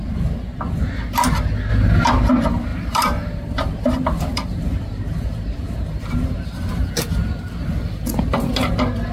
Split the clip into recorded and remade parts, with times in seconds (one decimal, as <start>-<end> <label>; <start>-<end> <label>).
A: 0.0-1.7 recorded; 1.7-2.3 remade; 2.3-2.7 recorded; 2.7-6.9 remade; 6.9-9.1 recorded